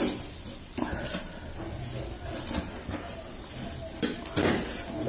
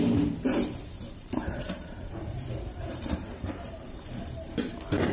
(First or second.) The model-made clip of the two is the second